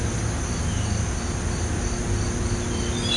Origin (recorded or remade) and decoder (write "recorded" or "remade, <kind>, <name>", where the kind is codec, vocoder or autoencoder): recorded